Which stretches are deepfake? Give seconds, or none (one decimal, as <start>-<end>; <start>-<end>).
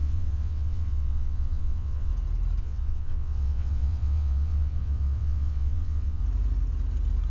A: 0.0-2.1; 2.6-6.2